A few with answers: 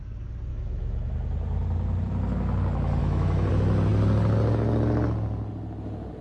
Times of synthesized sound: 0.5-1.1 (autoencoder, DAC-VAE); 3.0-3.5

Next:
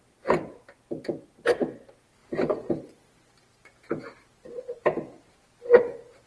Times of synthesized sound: none

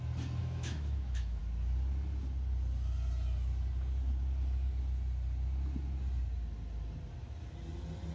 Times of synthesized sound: 0.4-1.4 (autoencoder, DAC-VAE)

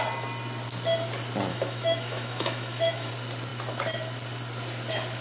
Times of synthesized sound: 1.5-3.1 (autoencoder, DAC-VAE)

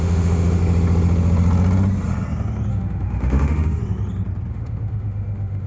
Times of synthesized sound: 0.0-0.6 (autoencoder, DAC-VAE); 2.7-3.8; 4.5-5.7

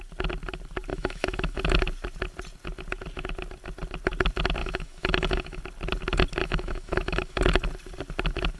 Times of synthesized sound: 0.9-1.6 (autoencoder, DAC-VAE); 4.6-5.6; 6.4-7.4